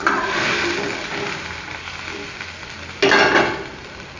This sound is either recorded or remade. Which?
recorded